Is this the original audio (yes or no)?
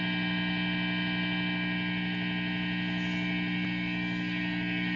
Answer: yes